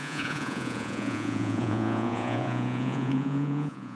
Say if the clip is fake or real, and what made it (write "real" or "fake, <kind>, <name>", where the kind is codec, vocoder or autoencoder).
fake, vocoder, Vocos